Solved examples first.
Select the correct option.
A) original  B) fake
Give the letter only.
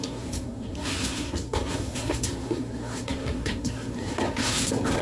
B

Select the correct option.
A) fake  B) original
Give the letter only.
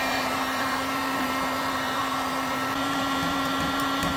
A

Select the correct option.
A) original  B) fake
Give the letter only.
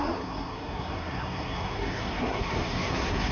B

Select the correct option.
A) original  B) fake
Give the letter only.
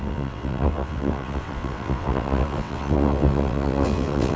B